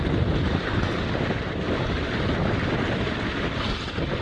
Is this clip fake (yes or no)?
no